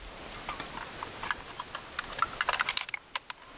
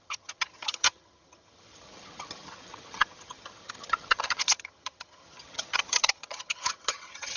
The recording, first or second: first